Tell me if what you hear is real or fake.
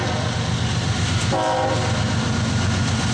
real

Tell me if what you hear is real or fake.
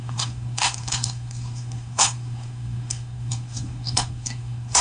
fake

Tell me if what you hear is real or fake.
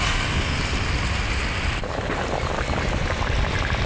real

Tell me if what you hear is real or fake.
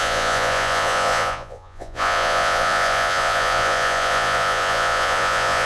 fake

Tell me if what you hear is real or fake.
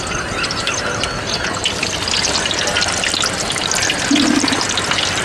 real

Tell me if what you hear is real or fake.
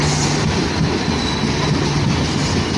real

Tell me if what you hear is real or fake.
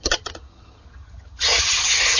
fake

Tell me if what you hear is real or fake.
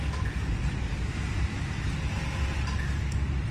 real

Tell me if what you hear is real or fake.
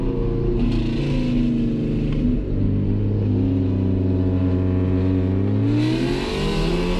real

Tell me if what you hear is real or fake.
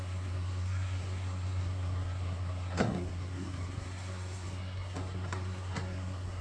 fake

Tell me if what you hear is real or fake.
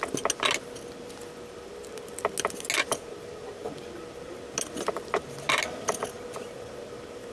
real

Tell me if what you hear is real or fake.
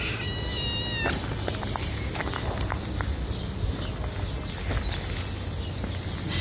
real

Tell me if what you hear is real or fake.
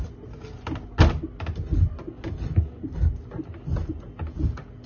real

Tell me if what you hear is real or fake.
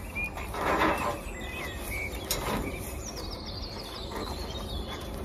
real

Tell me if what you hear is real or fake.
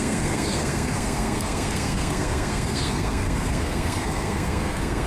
fake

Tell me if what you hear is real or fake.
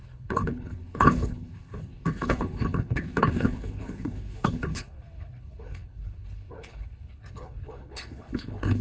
fake